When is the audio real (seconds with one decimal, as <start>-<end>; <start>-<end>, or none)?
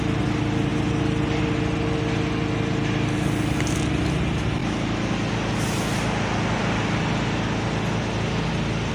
0.0-8.9